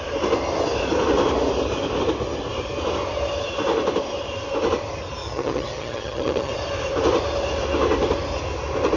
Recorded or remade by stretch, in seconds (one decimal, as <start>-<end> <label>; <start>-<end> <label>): 0.0-5.2 recorded; 5.2-6.5 remade; 6.5-9.0 recorded